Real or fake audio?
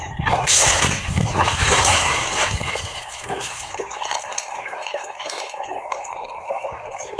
fake